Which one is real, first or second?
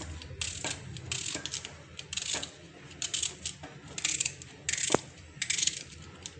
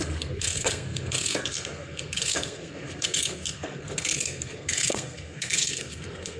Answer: first